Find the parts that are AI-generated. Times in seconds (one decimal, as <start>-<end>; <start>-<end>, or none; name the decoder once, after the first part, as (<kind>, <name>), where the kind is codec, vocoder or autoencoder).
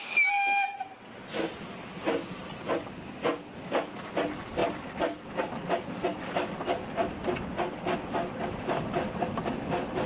none